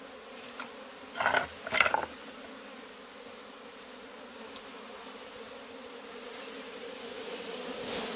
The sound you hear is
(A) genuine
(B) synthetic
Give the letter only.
A